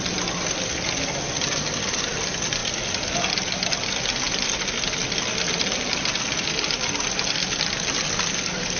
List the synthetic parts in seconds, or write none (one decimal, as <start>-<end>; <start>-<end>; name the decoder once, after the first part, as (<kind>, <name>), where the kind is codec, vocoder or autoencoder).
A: none